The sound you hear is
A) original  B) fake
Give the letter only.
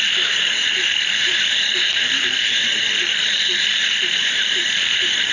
B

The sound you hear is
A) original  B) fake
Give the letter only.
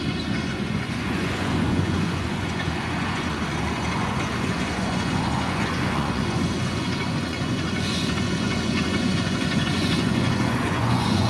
B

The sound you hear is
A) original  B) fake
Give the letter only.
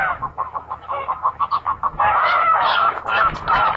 B